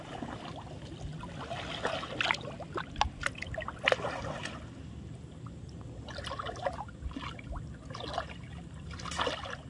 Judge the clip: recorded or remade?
recorded